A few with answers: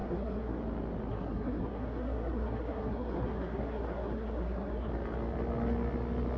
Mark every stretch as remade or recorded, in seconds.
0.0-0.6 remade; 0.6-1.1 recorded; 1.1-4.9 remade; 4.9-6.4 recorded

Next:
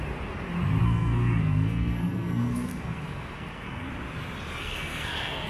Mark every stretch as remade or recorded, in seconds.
0.0-0.8 recorded; 0.8-3.9 remade; 3.9-4.6 recorded; 4.6-5.5 remade

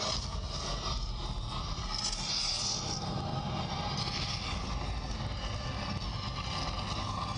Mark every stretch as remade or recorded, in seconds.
0.0-7.4 recorded

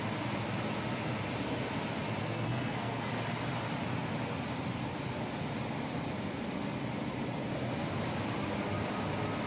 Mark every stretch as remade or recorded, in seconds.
0.0-2.2 recorded; 2.2-3.1 remade; 3.1-9.5 recorded

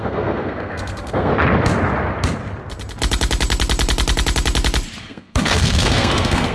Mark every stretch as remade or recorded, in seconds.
0.0-1.3 remade; 1.3-5.0 recorded; 5.0-6.5 remade